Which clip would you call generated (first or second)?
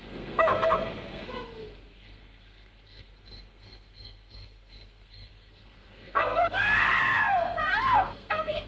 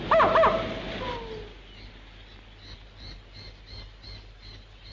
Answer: first